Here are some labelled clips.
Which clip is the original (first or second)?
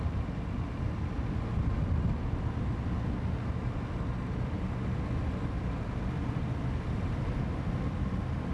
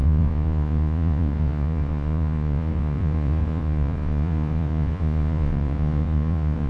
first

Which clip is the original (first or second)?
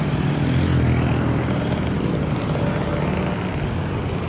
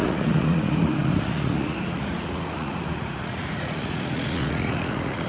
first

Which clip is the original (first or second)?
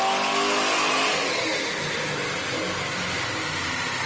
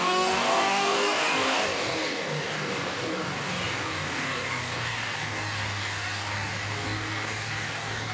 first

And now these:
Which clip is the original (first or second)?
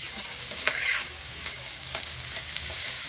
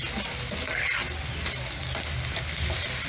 second